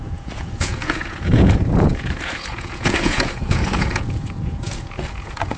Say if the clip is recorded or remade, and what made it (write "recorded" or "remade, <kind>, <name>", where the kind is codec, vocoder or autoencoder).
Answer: remade, vocoder, Vocos